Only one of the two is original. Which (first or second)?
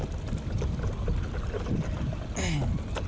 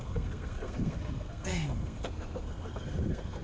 first